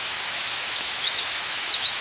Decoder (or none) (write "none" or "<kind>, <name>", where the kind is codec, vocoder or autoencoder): autoencoder, DAC-VAE